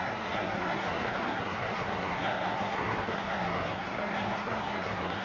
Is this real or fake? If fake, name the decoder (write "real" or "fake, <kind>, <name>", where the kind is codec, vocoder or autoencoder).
fake, codec, SNAC